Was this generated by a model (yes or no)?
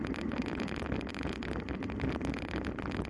no